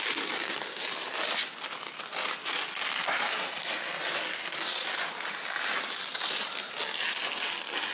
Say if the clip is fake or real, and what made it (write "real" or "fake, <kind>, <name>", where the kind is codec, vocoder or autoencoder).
real